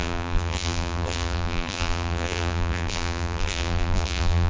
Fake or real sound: fake